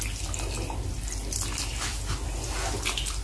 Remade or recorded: recorded